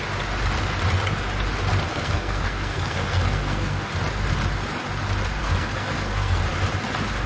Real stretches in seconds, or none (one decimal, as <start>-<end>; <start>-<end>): 0.0-1.9; 3.9-5.4; 6.4-7.3